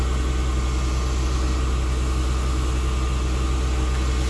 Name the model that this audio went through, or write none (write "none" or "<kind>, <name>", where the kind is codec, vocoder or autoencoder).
none